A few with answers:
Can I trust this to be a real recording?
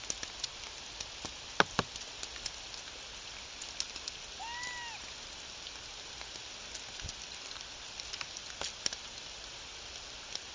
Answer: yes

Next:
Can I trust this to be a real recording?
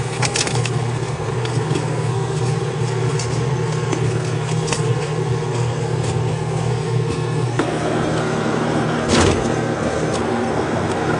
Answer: no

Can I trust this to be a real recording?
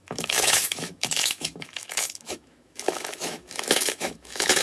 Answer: no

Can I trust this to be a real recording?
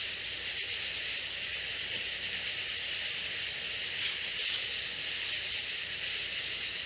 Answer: yes